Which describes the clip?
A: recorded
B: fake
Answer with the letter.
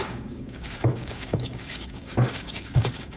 B